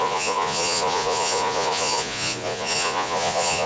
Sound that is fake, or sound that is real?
fake